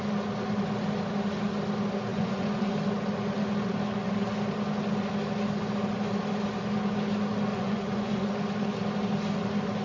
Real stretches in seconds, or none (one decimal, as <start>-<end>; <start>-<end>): 0.0-2.1; 2.7-7.5; 8.3-9.8